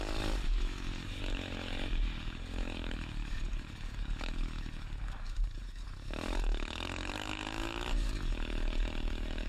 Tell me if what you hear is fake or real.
fake